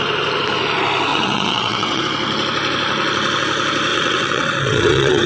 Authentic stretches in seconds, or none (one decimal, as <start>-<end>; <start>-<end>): 0.0-1.1; 2.0-3.9